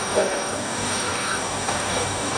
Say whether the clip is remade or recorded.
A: remade